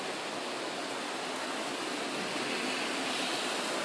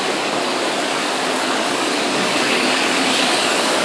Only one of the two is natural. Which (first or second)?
first